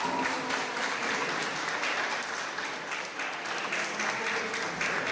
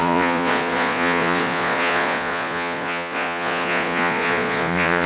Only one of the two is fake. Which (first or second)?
second